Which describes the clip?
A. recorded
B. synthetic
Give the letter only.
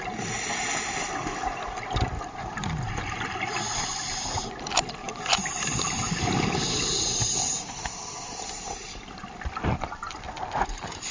B